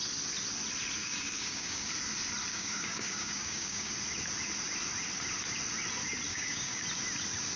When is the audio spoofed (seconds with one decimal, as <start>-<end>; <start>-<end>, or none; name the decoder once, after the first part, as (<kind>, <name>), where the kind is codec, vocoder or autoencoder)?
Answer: 1.0-1.9 (codec, DAC); 2.5-3.9; 6.3-6.8